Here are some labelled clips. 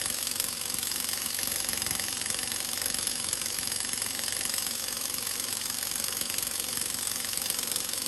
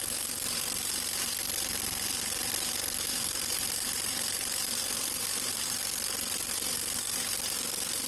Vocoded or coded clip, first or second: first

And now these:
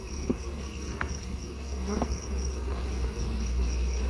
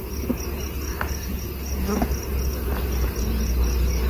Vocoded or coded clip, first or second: first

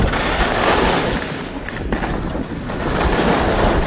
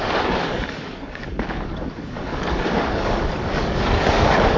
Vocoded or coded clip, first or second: second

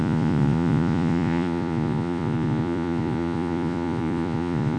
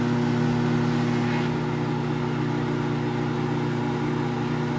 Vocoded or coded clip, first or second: first